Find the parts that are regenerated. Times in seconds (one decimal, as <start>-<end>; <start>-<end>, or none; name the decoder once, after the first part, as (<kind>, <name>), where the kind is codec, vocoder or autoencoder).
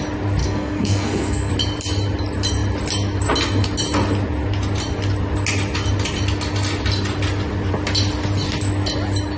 0.4-1.5 (codec, SNAC)